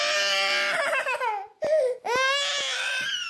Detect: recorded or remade recorded